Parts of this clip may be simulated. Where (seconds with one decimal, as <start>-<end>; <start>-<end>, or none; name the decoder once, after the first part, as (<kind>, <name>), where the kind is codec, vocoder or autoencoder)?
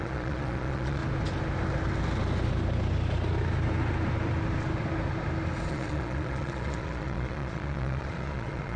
0.0-1.0 (vocoder, Vocos); 5.7-8.8